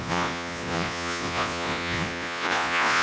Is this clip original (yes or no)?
no